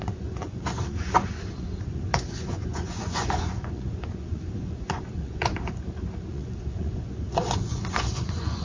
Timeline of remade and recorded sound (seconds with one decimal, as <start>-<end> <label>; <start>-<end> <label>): 0.0-5.5 remade; 5.5-6.3 recorded; 6.3-8.6 remade